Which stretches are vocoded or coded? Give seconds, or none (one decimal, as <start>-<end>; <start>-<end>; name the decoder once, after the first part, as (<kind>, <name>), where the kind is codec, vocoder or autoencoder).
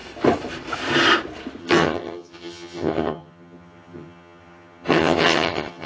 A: 1.6-5.9 (vocoder, HiFi-GAN)